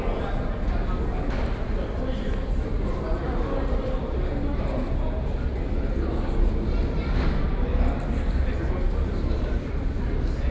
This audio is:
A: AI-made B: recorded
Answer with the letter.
B